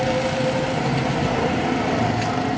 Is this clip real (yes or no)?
yes